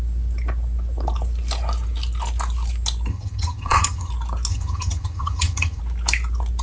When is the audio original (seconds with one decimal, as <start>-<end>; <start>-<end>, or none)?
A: 0.0-3.1; 4.1-4.5; 5.8-6.6